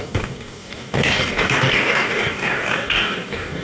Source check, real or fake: fake